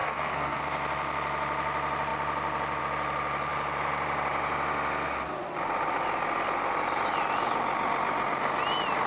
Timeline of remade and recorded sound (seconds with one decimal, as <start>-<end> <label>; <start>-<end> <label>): 0.0-0.6 remade; 0.6-9.1 recorded